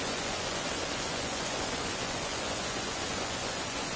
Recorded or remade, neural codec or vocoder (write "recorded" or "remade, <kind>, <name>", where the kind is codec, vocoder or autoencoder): remade, vocoder, Vocos